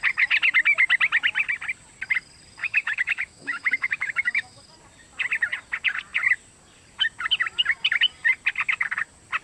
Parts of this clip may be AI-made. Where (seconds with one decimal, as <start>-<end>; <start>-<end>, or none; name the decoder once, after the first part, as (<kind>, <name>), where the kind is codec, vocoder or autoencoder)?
2.6-4.6 (autoencoder, DAC-VAE)